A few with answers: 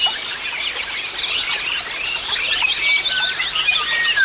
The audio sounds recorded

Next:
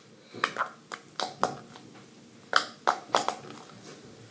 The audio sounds recorded